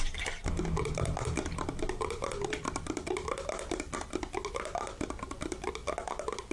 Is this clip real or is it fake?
real